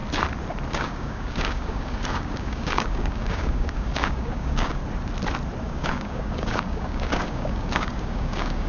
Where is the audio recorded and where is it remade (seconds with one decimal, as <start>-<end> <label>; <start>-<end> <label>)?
0.0-0.7 recorded; 0.7-4.8 remade; 4.8-5.6 recorded; 5.6-8.7 remade

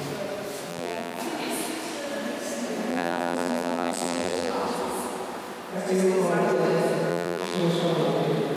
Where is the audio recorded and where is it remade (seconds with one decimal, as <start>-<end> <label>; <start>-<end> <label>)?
0.0-0.7 recorded; 0.7-1.2 remade; 1.2-2.9 recorded; 2.9-4.5 remade; 4.5-7.1 recorded; 7.1-7.6 remade; 7.6-8.6 recorded

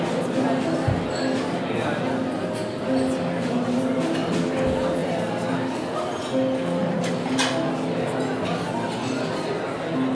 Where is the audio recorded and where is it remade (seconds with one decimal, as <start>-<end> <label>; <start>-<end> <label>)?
0.0-2.6 recorded; 2.6-4.3 remade; 4.3-10.1 recorded

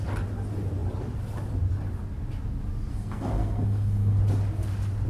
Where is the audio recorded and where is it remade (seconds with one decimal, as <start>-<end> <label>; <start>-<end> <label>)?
0.0-2.9 recorded; 2.9-4.2 remade; 4.2-5.1 recorded

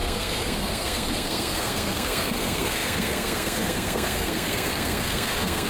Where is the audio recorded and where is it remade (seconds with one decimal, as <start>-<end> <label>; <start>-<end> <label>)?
0.0-5.7 remade

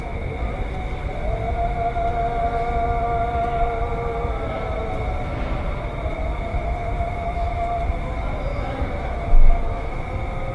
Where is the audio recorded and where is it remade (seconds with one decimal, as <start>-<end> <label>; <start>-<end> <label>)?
0.0-6.5 recorded; 6.5-7.7 remade; 7.7-8.5 recorded; 8.5-10.1 remade; 10.1-10.5 recorded

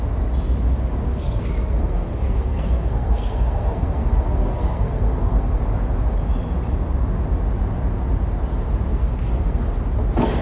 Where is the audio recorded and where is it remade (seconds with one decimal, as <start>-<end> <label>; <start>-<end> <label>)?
0.0-1.1 recorded; 1.1-5.6 remade; 5.6-8.9 recorded; 8.9-9.6 remade; 9.6-10.4 recorded

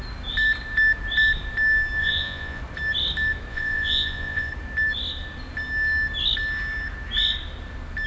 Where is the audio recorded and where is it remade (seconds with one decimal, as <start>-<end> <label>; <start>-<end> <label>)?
0.0-2.0 recorded; 2.0-2.6 remade; 2.6-3.5 recorded; 3.5-4.5 remade; 4.5-8.1 recorded